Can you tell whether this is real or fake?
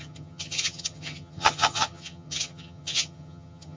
fake